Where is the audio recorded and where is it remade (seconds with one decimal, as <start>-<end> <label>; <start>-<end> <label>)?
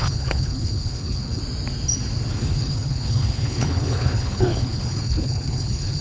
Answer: 0.0-1.4 remade; 1.4-2.3 recorded; 2.3-6.0 remade